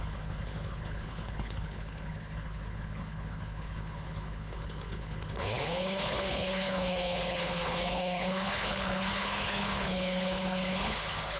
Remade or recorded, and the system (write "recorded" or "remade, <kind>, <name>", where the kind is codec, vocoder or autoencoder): remade, codec, HILCodec